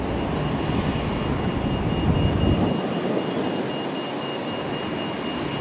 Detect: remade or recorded recorded